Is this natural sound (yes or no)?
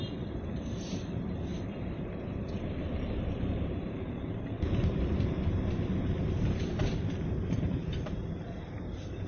no